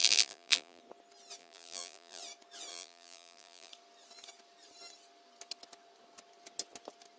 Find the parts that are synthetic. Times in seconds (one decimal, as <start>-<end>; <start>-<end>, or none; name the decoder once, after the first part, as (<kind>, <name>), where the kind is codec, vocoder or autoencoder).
0.0-0.8 (vocoder, BigVGAN v2); 1.4-2.2; 2.7-3.7